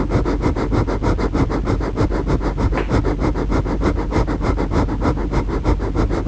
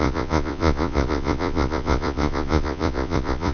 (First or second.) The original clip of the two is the first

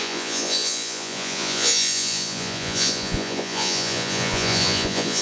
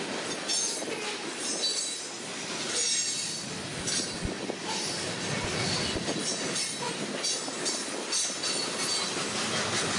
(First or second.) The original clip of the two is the second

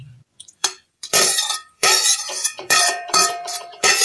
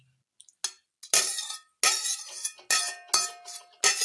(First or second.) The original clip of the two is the second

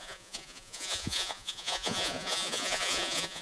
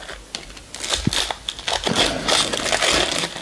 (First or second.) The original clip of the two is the second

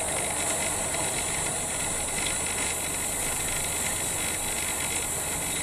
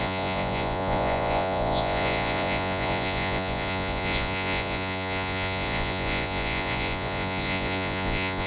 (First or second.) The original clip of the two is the first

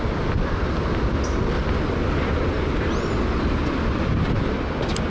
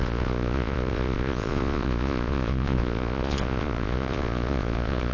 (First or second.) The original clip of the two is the first